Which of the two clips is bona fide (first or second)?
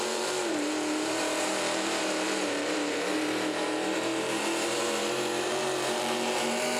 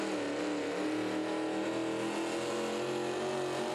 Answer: second